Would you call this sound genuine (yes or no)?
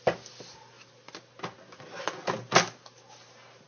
yes